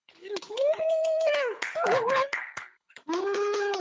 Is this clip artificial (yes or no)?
yes